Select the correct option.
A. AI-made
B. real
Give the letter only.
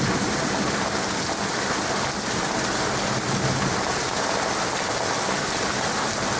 B